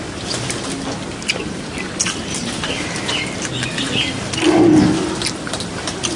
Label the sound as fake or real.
real